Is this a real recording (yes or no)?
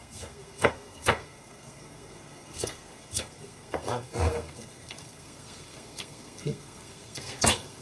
no